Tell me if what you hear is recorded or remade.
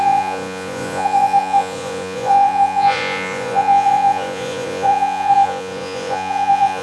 remade